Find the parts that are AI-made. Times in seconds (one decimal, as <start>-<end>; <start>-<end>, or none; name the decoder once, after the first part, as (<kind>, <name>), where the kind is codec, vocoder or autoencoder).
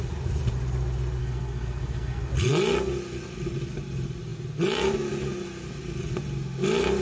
1.2-2.3 (codec, SNAC)